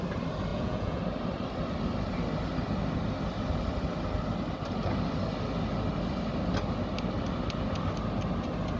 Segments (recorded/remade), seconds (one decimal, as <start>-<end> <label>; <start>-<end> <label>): 0.0-0.5 recorded; 0.5-1.0 remade; 1.0-8.8 recorded